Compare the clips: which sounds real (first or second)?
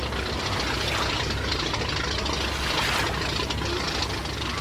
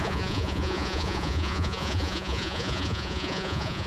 first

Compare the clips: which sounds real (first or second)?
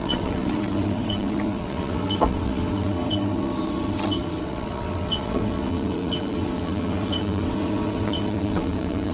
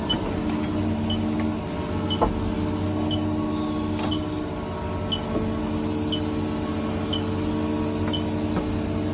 second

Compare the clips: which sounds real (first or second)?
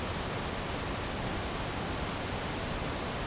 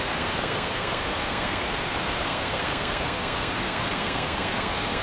first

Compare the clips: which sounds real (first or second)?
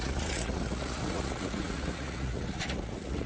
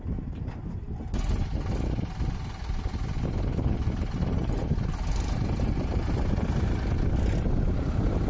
second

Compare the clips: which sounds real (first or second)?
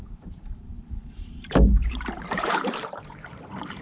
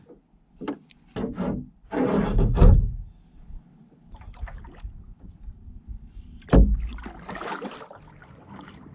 second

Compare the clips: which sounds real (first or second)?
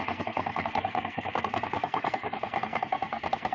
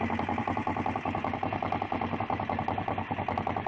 second